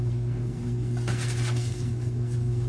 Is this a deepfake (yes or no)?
yes